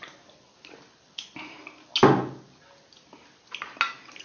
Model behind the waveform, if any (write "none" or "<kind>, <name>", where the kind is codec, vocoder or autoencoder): none